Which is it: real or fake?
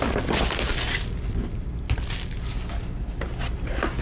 real